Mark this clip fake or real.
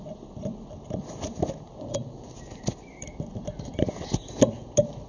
real